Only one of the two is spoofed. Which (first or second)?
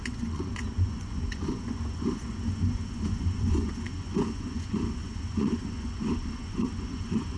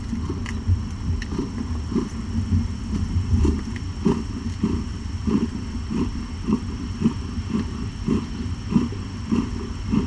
first